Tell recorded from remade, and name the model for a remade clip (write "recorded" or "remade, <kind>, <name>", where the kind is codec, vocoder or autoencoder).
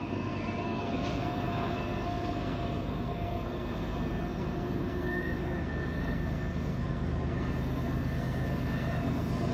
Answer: remade, codec, SNAC